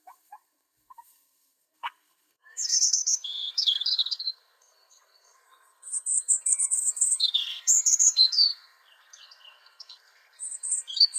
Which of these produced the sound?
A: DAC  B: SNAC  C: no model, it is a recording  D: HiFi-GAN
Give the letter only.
B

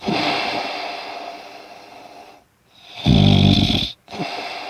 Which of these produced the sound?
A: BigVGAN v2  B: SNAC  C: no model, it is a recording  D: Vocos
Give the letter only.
A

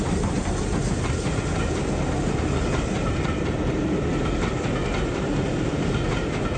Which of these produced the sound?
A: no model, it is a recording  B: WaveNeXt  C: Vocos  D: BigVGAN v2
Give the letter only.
A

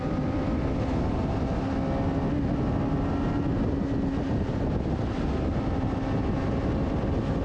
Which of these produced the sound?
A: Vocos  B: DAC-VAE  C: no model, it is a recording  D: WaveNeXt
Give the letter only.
C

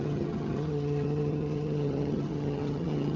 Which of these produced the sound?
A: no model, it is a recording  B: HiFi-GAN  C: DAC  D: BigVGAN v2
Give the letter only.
B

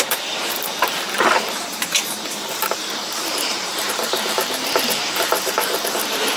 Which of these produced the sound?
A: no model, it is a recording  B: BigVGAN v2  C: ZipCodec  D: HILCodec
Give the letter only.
B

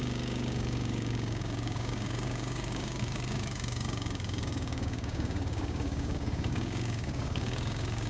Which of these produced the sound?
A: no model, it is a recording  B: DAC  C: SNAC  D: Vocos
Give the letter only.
B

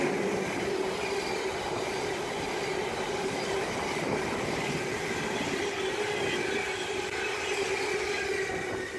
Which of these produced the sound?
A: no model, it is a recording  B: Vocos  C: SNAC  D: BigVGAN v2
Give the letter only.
A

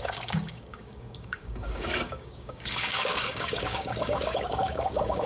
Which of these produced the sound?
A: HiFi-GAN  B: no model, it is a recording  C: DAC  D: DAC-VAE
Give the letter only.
C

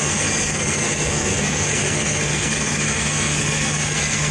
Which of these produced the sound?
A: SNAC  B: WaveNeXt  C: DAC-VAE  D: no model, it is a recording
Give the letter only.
A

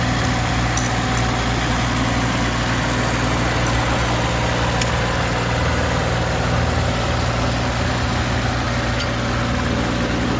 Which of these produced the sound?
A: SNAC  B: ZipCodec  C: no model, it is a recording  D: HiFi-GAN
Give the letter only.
C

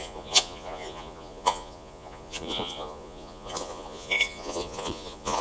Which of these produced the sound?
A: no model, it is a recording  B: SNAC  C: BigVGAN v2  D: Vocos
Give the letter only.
D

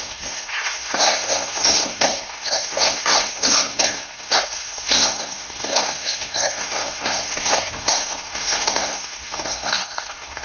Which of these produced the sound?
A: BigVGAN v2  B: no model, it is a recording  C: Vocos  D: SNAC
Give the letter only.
D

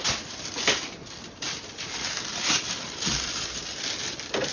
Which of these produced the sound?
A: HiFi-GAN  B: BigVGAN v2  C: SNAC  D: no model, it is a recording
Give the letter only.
D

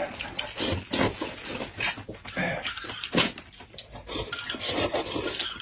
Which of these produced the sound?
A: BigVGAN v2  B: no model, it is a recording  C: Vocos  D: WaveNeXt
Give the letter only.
B